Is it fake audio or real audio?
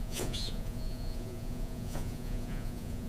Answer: fake